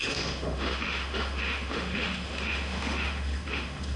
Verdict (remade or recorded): remade